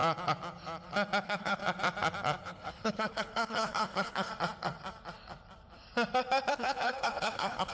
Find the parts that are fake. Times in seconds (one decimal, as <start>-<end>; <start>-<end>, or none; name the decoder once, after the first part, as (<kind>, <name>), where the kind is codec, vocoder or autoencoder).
1.2-1.6 (codec, HILCodec); 2.4-4.3; 6.5-7.7